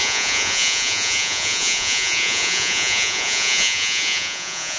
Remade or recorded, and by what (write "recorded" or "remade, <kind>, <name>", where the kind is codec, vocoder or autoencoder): remade, vocoder, Vocos